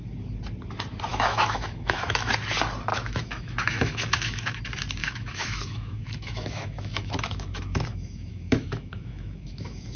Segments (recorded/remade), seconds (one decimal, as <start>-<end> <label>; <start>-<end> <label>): 0.0-1.1 recorded; 1.1-2.3 remade; 2.3-2.9 recorded; 2.9-4.6 remade; 4.6-5.0 recorded; 5.0-10.0 remade